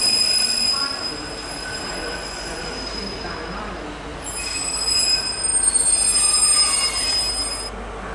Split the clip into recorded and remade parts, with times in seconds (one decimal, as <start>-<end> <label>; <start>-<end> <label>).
0.0-2.0 recorded; 2.0-2.6 remade; 2.6-8.1 recorded